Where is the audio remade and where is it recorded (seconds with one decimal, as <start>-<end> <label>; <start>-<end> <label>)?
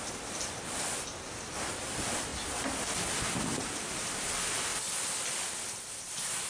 0.0-2.3 remade; 2.3-3.6 recorded; 3.6-6.5 remade